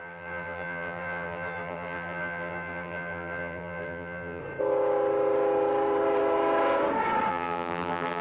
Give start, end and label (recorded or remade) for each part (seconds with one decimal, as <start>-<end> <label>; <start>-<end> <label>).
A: 0.0-4.4 remade; 4.4-7.3 recorded; 7.3-8.2 remade